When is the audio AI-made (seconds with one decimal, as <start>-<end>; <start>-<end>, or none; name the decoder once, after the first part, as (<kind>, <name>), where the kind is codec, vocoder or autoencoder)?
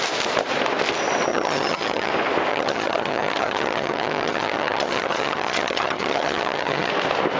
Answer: 1.3-2.1 (vocoder, HiFi-GAN); 2.5-6.9